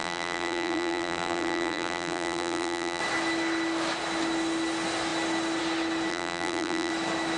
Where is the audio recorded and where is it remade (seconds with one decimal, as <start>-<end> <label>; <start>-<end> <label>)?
0.0-3.0 remade; 3.0-6.1 recorded; 6.1-6.9 remade; 6.9-7.4 recorded

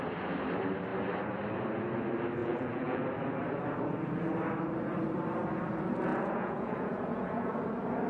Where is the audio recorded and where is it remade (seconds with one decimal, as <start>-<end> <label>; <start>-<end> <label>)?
0.0-2.4 recorded; 2.4-3.0 remade; 3.0-6.1 recorded; 6.1-7.5 remade; 7.5-8.1 recorded